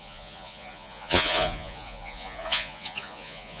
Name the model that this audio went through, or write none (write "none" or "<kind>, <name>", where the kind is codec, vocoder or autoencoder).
vocoder, Vocos